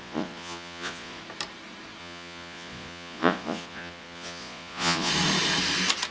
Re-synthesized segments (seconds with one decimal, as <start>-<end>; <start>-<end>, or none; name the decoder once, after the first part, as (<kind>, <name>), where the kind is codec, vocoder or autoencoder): 0.0-1.2 (vocoder, Vocos); 2.0-5.1